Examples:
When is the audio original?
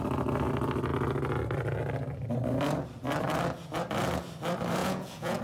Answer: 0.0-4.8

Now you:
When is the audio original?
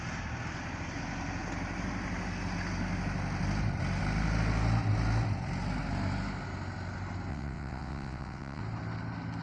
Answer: 0.0-7.3; 8.6-9.4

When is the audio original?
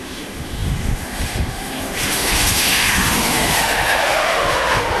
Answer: none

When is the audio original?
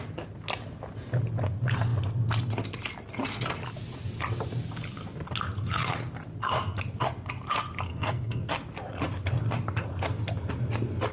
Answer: 0.0-7.9; 8.5-11.1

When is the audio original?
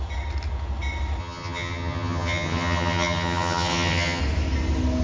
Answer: 0.0-1.2; 4.2-5.0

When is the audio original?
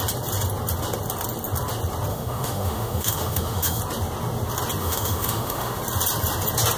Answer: 0.0-2.1; 3.8-4.8; 5.8-6.8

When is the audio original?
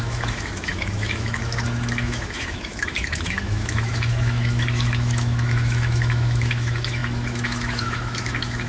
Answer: none